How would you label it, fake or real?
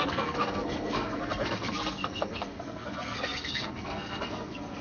fake